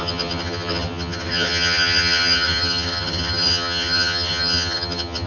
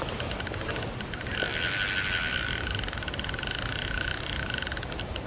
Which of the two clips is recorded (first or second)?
second